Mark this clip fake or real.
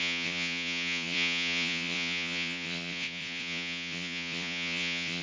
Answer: fake